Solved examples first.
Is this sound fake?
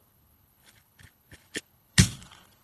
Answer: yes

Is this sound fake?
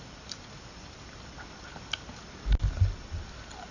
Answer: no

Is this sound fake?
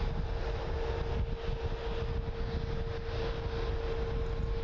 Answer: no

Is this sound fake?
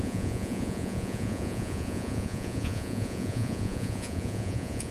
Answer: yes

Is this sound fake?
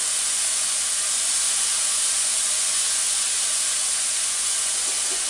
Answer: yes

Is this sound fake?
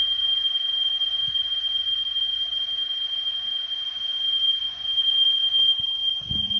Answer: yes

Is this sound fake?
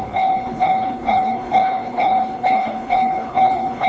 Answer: yes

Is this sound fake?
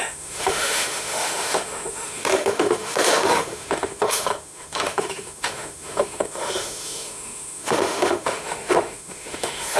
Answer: yes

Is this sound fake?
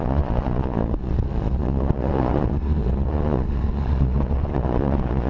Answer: yes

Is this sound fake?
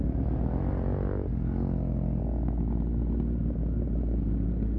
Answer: no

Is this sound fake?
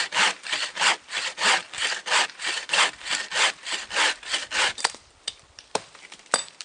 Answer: yes